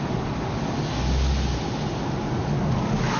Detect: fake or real real